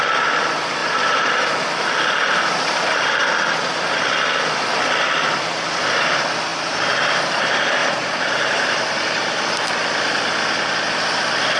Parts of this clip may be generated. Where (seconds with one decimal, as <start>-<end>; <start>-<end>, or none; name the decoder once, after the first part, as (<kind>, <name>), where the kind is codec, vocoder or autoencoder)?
0.8-3.3 (vocoder, BigVGAN v2); 7.8-9.4